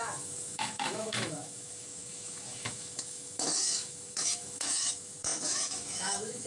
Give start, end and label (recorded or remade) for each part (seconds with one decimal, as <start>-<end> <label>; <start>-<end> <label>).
0.0-6.5 remade